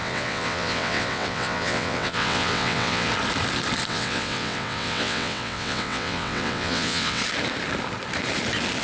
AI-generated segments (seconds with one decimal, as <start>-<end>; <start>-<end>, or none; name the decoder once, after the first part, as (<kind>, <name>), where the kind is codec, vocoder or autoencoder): 0.0-3.1 (vocoder, WaveNeXt); 3.9-7.2